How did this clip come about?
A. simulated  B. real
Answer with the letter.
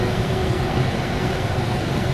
A